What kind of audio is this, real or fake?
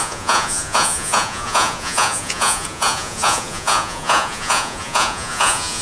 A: fake